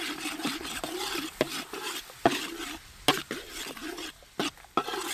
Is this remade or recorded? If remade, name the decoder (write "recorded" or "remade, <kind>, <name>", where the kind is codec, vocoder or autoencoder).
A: recorded